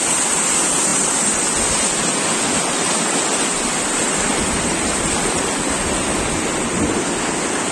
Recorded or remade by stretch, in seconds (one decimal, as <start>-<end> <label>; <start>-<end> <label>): 0.0-0.9 recorded; 0.9-1.4 remade; 1.4-7.7 recorded